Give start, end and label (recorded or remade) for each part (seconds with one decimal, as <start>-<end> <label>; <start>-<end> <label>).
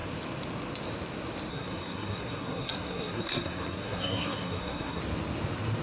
0.0-1.5 recorded; 1.5-5.0 remade; 5.0-5.8 recorded